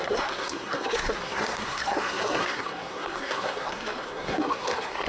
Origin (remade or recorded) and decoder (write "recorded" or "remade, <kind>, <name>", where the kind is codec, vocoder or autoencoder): remade, codec, SNAC